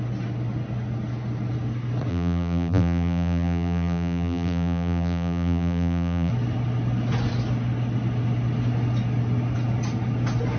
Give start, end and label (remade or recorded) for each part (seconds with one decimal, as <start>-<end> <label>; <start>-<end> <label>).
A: 0.0-2.1 recorded; 2.1-6.3 remade; 6.3-10.6 recorded